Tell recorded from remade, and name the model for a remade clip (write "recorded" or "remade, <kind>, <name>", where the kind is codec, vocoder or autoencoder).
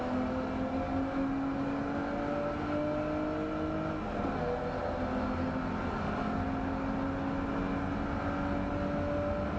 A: recorded